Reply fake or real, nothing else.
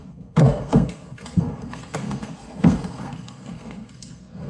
fake